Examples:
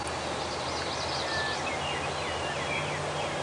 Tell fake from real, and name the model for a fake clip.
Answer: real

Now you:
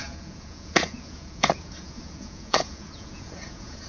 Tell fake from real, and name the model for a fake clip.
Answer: fake, vocoder, Vocos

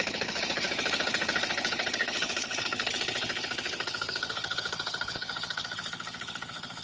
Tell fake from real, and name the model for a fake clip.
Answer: fake, codec, HILCodec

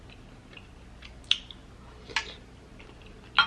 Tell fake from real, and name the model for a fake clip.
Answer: real